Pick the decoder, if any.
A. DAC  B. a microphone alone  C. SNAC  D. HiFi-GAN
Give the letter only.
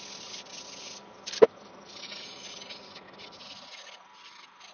B